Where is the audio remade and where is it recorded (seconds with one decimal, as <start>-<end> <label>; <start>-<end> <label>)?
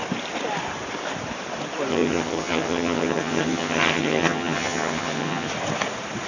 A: 0.0-1.9 recorded; 1.9-5.5 remade; 5.5-6.3 recorded